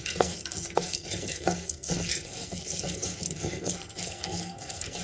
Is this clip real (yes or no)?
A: no